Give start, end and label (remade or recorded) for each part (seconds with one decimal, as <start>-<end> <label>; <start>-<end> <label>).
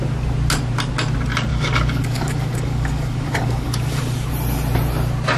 0.0-1.5 recorded; 1.5-4.0 remade; 4.0-5.4 recorded